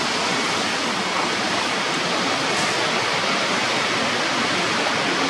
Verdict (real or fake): fake